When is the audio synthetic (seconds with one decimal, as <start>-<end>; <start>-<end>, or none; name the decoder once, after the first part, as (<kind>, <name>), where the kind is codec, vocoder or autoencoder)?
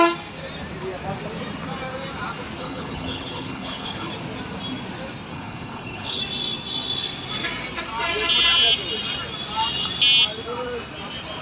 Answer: 2.6-4.1 (codec, HILCodec); 5.3-6.2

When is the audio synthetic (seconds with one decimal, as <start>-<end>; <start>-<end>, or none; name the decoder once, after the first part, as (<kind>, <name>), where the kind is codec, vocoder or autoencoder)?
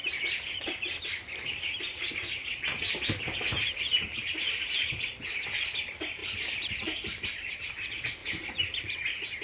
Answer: 0.0-9.4 (vocoder, BigVGAN v2)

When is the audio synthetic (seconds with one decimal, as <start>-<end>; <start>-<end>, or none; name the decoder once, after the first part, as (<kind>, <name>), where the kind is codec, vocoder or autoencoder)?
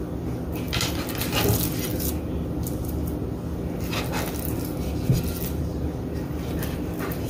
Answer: none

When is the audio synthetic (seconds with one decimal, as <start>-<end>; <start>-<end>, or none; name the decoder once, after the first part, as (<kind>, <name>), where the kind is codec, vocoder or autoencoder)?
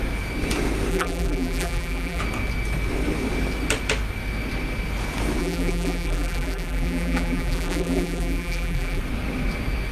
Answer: 0.9-2.2 (vocoder, BigVGAN v2); 5.4-9.0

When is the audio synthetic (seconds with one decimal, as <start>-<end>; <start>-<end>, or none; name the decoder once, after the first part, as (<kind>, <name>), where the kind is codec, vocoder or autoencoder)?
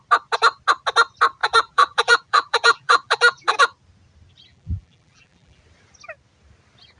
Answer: 1.4-3.6 (vocoder, BigVGAN v2); 4.5-5.6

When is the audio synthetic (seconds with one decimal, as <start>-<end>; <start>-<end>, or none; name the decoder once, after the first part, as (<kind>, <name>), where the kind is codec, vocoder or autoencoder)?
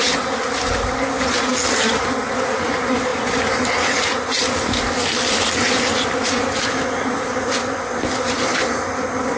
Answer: none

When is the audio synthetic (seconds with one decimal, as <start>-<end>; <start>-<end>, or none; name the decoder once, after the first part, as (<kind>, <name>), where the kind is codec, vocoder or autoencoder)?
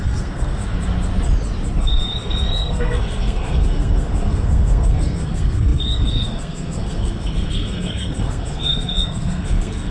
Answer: 0.0-0.6 (codec, SNAC); 1.8-9.9